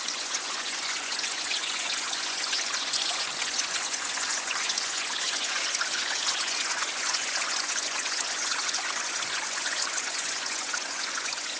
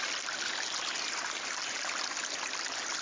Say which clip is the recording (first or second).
second